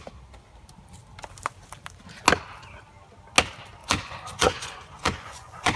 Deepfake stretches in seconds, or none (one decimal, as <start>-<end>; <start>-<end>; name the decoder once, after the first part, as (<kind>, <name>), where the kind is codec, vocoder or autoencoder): 3.8-5.8 (vocoder, Vocos)